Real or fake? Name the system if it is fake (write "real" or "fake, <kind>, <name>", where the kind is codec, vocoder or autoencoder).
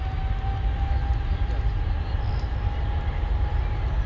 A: real